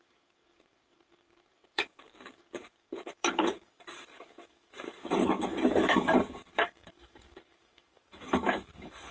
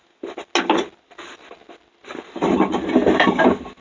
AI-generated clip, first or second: first